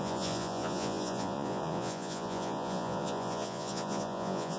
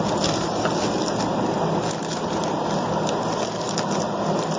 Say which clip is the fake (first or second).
first